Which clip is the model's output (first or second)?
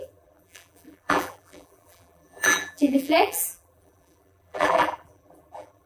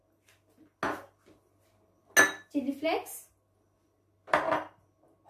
first